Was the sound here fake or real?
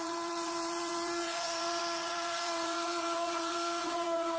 fake